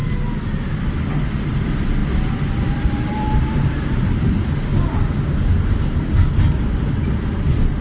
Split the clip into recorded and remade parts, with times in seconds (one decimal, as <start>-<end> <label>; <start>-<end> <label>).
0.0-0.7 recorded; 0.7-4.7 remade; 4.7-6.7 recorded; 6.7-7.8 remade